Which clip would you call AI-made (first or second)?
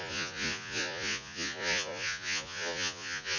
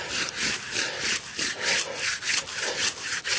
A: first